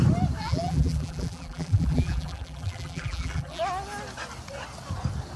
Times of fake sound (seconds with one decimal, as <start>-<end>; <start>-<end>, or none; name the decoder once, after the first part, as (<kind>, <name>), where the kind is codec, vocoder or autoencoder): 0.4-3.6 (vocoder, BigVGAN v2)